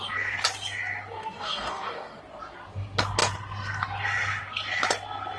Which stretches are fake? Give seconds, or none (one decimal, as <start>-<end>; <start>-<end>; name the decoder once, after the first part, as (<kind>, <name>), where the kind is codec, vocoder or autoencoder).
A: 1.2-2.2 (codec, DAC)